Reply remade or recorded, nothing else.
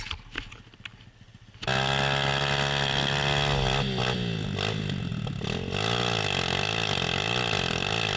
recorded